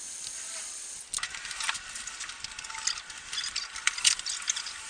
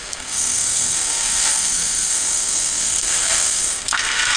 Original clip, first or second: first